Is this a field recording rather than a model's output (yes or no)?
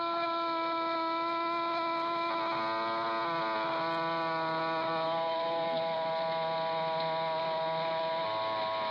yes